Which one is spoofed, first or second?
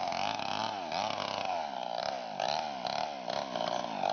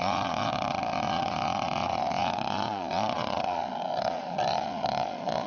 second